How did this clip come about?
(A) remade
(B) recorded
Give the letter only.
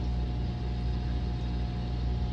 B